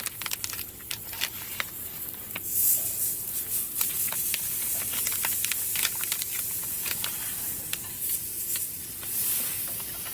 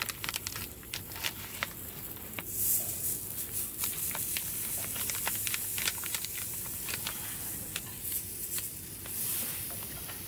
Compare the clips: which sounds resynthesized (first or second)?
first